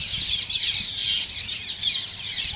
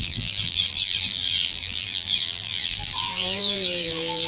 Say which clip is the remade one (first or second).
second